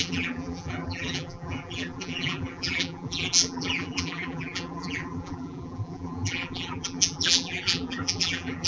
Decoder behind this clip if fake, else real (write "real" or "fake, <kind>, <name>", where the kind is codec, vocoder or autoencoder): fake, vocoder, BigVGAN v2